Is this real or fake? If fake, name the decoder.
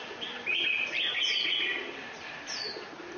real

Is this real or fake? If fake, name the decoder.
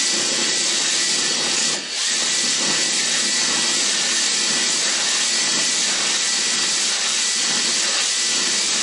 real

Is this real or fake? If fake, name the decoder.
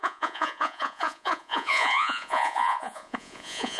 fake, vocoder, Vocos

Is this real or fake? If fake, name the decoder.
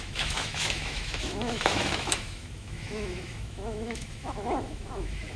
fake, autoencoder, DAC-VAE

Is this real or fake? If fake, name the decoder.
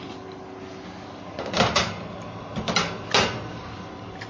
real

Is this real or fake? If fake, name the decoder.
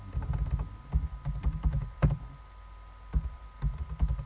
real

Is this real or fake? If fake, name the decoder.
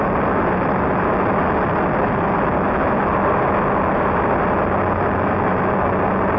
real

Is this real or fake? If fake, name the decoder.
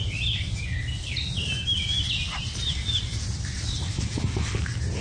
real